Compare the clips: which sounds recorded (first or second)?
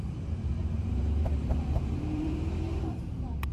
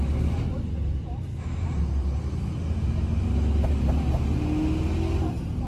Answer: second